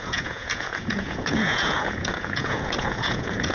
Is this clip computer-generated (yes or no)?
yes